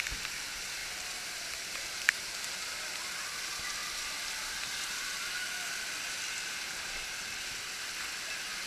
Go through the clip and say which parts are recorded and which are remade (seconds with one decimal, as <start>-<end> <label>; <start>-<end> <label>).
0.0-8.7 recorded